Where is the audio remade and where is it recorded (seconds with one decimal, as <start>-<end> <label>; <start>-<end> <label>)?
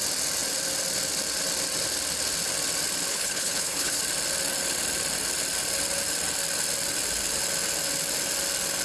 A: 0.0-3.1 recorded; 3.1-4.0 remade; 4.0-8.8 recorded